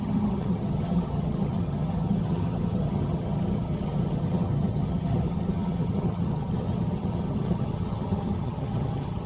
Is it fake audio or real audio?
fake